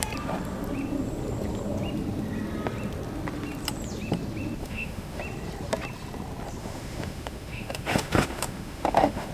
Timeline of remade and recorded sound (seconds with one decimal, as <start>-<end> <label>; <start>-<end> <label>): 0.0-4.6 recorded; 4.6-5.2 remade; 5.2-6.6 recorded; 6.6-9.3 remade